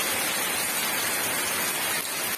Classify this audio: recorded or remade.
recorded